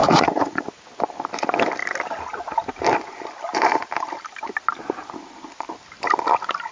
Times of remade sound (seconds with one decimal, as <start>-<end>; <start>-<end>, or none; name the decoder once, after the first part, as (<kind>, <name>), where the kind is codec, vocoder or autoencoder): 0.0-0.7 (vocoder, Vocos)